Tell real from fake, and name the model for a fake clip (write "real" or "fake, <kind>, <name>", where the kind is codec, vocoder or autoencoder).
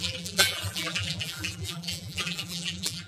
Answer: fake, vocoder, BigVGAN v2